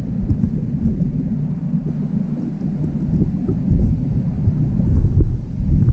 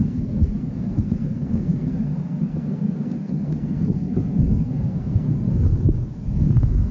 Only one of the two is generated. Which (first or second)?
second